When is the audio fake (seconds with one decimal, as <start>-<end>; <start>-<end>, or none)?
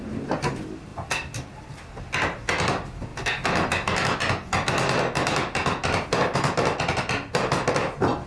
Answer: none